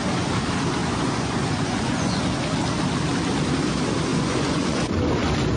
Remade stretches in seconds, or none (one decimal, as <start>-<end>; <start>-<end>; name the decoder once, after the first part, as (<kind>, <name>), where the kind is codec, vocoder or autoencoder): 0.8-2.3 (vocoder, Vocos); 4.1-4.9